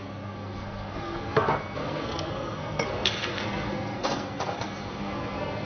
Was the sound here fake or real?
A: fake